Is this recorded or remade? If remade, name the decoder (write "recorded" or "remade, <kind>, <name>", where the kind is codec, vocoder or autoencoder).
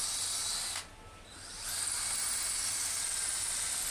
recorded